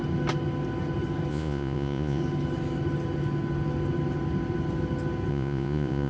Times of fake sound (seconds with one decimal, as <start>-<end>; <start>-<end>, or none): 1.3-2.2; 5.3-6.1